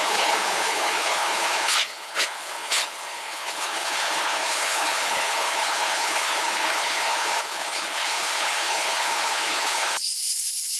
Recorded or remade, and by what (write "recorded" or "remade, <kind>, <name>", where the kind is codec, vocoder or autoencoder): remade, codec, HILCodec